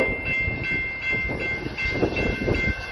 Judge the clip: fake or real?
real